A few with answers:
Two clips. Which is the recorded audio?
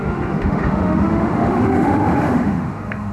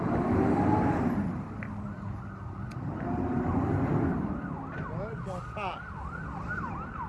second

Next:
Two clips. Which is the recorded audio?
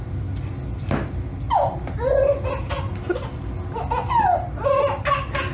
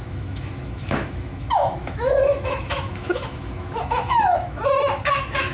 first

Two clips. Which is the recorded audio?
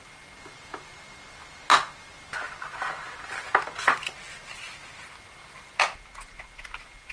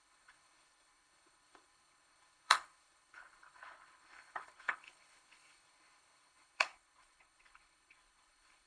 first